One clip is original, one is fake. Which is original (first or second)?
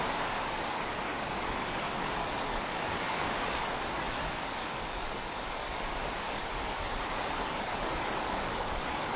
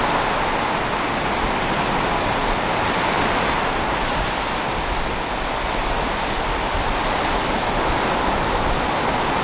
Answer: second